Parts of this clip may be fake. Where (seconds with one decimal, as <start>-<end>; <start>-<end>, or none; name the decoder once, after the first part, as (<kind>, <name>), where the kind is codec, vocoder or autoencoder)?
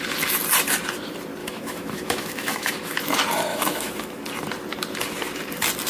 1.4-3.0 (autoencoder, DAC-VAE); 3.5-4.2